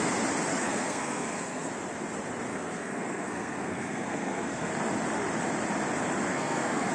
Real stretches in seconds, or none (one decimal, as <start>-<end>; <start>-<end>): 0.0-0.5; 1.7-2.5; 4.7-6.3

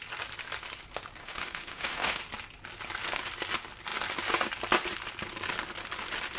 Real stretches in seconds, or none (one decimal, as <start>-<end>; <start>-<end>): 0.0-1.2; 2.2-6.4